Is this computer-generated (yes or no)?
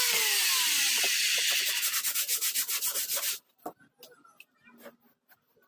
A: no